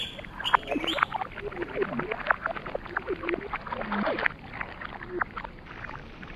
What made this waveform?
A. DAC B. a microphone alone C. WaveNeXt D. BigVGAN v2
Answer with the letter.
B